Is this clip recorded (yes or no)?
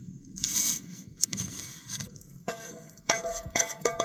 no